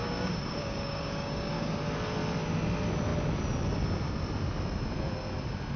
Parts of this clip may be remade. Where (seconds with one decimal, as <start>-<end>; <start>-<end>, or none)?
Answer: 0.0-1.8